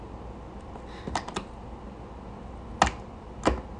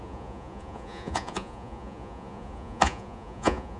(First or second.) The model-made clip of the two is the second